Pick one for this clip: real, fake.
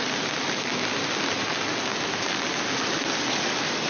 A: real